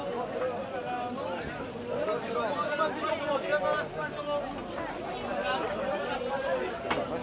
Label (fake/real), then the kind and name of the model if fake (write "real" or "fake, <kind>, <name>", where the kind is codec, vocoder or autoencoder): real